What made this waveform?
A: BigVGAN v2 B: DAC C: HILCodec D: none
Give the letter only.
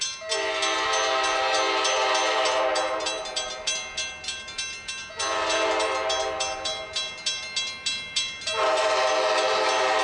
D